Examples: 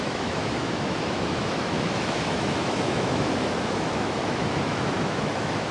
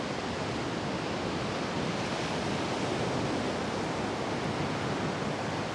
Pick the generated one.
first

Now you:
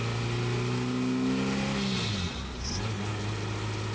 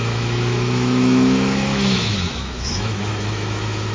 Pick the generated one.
second